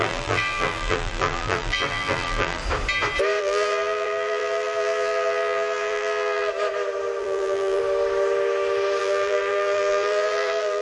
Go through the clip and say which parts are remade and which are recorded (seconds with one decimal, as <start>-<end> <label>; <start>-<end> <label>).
0.0-2.6 remade; 2.6-3.4 recorded; 3.4-6.5 remade; 6.5-7.2 recorded; 7.2-7.8 remade; 7.8-9.0 recorded; 9.0-10.8 remade